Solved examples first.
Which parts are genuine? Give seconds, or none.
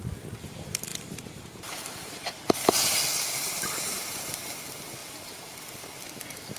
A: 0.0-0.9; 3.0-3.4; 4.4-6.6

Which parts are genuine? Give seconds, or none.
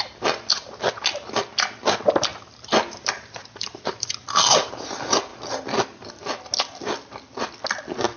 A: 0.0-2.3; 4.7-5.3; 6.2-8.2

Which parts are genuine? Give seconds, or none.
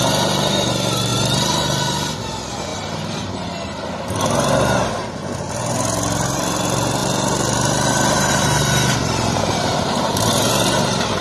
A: 0.0-1.1; 2.2-2.7; 3.8-7.0